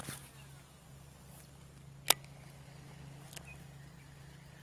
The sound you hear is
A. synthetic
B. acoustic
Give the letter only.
B